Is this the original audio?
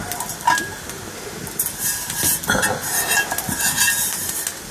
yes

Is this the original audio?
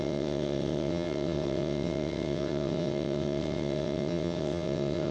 no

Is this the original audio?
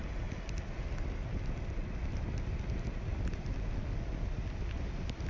yes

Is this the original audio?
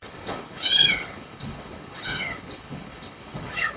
no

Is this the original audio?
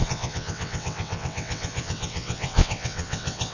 no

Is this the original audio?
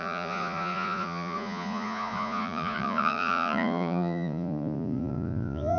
no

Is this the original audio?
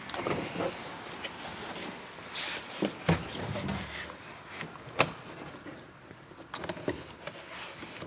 yes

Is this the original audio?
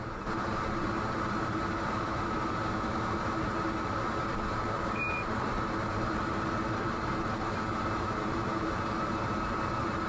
no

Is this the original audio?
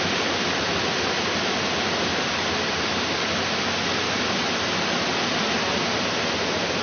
yes